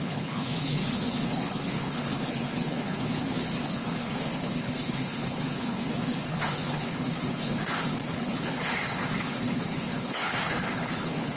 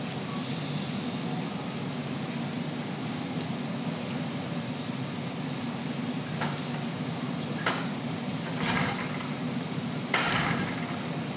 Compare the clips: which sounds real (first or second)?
second